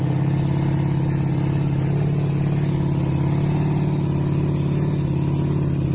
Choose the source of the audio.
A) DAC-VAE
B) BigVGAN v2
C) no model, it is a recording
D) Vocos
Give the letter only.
C